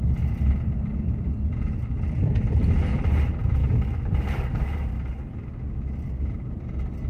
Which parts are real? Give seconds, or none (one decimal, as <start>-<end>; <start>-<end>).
0.0-3.6; 5.3-7.1